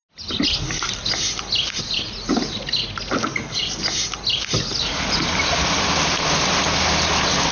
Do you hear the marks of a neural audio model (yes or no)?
no